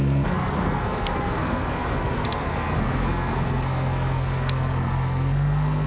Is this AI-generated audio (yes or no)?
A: yes